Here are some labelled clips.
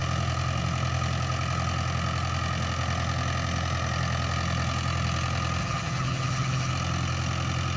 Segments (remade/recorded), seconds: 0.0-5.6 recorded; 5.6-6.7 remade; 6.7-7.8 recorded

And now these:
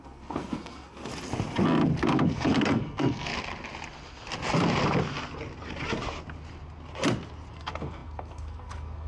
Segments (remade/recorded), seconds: 0.0-1.1 remade; 1.1-2.0 recorded; 2.0-3.3 remade; 3.3-7.5 recorded; 7.5-9.1 remade

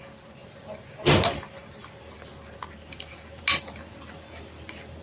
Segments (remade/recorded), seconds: 0.0-5.0 recorded

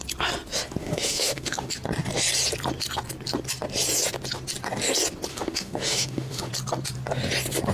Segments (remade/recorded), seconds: 0.0-0.8 recorded; 0.8-1.7 remade; 1.7-5.3 recorded; 5.3-6.5 remade; 6.5-7.7 recorded

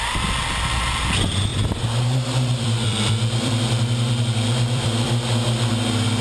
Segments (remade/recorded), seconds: 0.0-1.5 recorded; 1.5-5.1 remade; 5.1-6.2 recorded

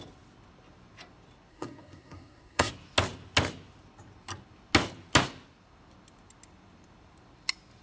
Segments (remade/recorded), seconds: 0.0-1.5 recorded; 1.5-2.7 remade; 2.7-7.8 recorded

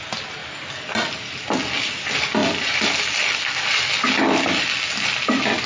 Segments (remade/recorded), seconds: 0.0-5.7 recorded

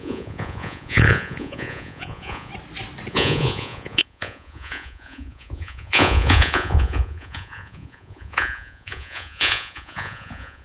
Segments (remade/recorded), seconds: 0.0-2.5 remade; 2.5-3.1 recorded; 3.1-10.6 remade